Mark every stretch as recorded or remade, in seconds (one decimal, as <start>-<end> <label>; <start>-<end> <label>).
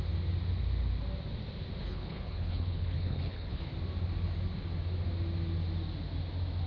0.0-1.8 recorded; 1.8-3.7 remade; 3.7-6.7 recorded